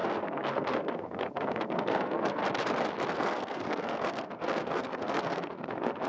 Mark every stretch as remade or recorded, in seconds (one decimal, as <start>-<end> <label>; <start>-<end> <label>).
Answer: 0.0-2.4 remade; 2.4-3.1 recorded; 3.1-6.1 remade